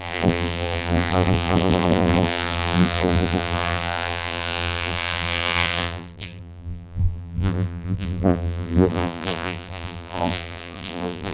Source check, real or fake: fake